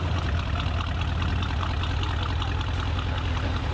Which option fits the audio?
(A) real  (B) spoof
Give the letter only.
A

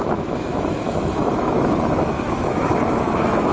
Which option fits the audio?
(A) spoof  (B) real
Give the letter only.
A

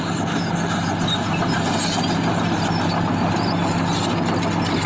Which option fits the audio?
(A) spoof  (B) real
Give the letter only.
B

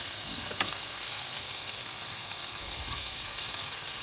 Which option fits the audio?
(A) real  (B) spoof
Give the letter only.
B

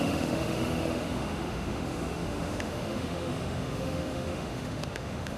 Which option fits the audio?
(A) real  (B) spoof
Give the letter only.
B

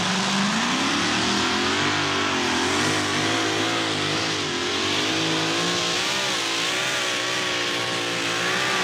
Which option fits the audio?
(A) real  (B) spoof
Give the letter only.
A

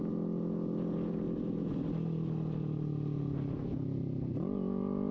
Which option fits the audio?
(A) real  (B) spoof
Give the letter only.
A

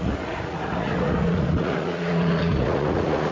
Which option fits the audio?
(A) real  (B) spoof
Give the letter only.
B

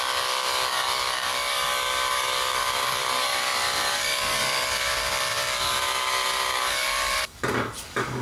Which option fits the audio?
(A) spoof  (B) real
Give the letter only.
A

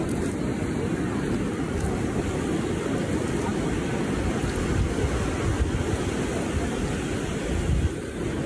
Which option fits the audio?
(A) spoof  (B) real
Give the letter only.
B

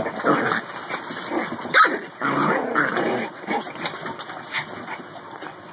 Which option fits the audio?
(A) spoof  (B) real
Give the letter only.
B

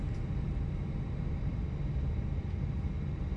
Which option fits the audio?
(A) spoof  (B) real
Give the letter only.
B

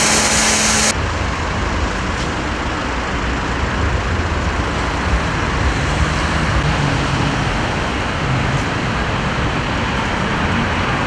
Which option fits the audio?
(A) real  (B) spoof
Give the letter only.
A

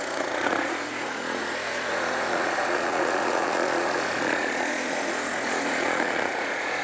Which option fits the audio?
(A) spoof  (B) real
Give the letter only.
A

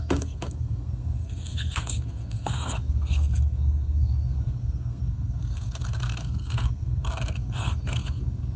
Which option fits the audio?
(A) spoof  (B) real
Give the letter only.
A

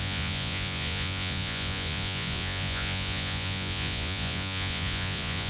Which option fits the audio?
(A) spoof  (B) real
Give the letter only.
A